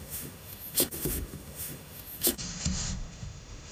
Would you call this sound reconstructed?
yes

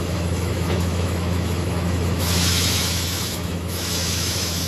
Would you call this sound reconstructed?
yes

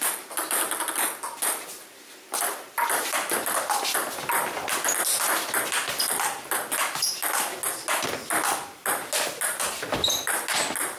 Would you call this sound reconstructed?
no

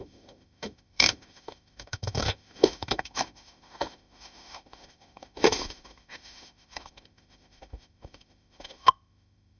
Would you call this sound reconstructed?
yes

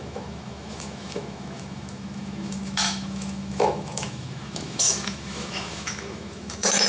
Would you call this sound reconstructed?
yes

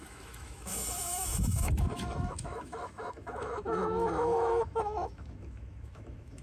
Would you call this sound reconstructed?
yes